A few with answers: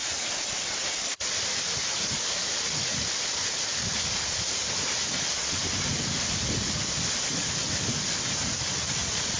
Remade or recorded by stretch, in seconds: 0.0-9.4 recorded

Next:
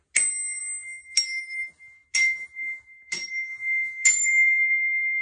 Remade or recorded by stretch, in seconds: 0.0-5.2 recorded